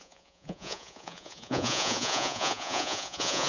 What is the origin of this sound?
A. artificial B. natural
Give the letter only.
A